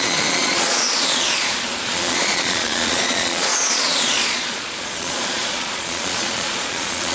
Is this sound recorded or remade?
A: remade